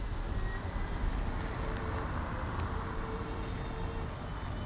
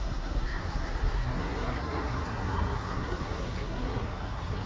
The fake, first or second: second